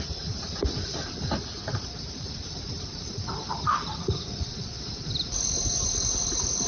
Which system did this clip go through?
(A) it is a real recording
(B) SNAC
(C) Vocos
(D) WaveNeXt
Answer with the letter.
A